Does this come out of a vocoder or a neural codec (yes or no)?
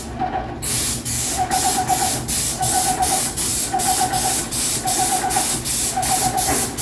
no